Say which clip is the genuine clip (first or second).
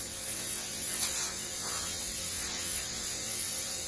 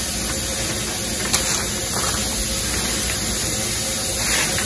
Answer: second